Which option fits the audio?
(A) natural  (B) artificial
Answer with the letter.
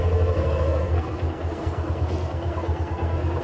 B